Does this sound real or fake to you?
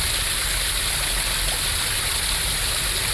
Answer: real